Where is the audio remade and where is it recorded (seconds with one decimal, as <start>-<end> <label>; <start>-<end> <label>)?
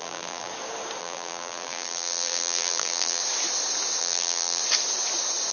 0.0-0.5 remade; 0.5-1.0 recorded; 1.0-3.2 remade; 3.2-4.0 recorded; 4.0-4.6 remade; 4.6-5.5 recorded